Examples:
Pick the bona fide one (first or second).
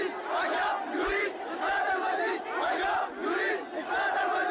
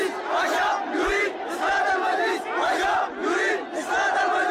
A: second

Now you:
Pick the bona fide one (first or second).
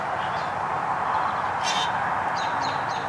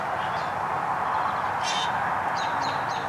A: second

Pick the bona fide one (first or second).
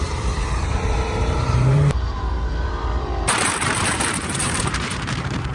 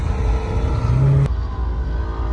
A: second